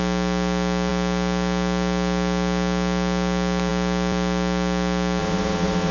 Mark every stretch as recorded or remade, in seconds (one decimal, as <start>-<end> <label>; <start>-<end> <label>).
0.0-5.2 recorded; 5.2-5.9 remade